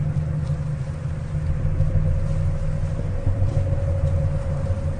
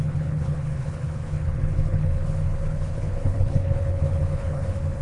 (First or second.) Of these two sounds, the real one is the first